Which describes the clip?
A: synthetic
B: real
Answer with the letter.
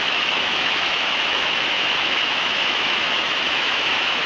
A